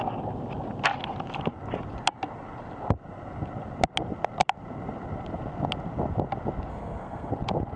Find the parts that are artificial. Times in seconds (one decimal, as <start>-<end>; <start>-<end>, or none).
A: 6.7-7.3